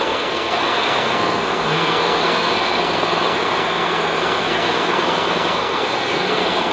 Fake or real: fake